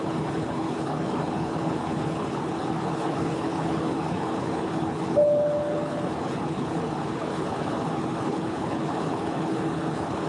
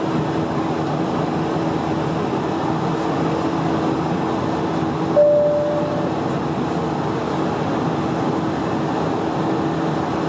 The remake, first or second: first